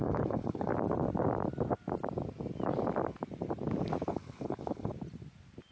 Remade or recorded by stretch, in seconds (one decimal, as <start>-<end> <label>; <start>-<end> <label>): 0.0-0.7 remade; 0.7-4.1 recorded; 4.1-4.9 remade; 4.9-5.7 recorded